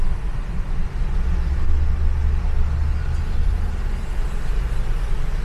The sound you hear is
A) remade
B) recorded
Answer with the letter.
B